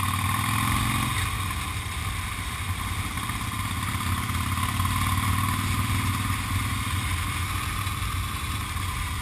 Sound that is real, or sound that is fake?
real